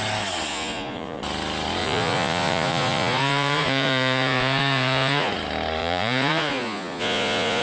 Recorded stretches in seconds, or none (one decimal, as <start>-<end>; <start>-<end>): 0.0-0.5; 1.2-1.8; 5.3-5.8